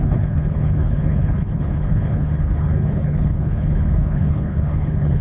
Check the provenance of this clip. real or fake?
fake